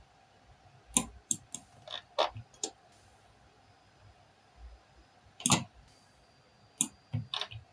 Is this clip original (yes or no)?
yes